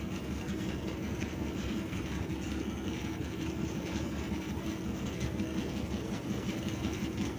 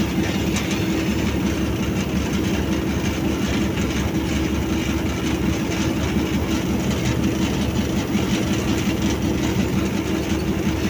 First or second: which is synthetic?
first